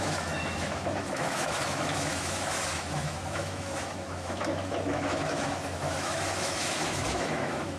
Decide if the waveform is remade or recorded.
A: remade